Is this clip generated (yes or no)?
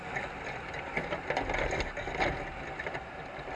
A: no